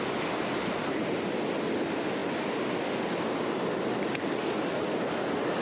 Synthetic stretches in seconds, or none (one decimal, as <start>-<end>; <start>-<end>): none